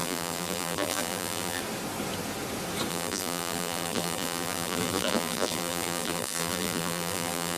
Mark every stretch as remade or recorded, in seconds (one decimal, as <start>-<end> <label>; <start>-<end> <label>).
0.0-1.6 remade; 1.6-2.9 recorded; 2.9-7.6 remade